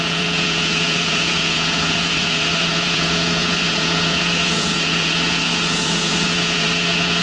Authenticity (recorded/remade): remade